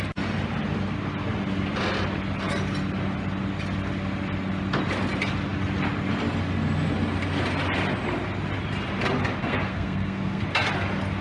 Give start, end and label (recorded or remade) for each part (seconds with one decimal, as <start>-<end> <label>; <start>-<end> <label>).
0.0-9.4 recorded; 9.4-10.4 remade; 10.4-11.2 recorded